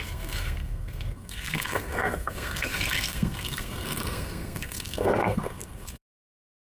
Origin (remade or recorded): remade